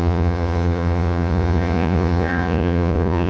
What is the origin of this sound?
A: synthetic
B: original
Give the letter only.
A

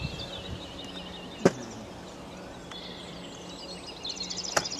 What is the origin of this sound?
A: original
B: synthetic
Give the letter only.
A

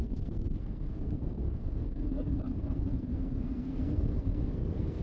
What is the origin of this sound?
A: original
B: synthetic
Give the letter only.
B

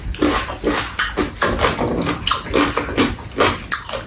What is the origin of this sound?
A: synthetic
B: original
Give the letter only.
B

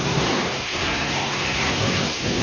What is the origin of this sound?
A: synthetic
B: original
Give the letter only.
A